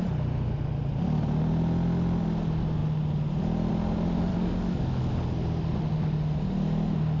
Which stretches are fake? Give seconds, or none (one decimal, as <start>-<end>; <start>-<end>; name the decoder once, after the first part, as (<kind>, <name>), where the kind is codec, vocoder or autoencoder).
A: 4.3-5.0 (codec, DAC)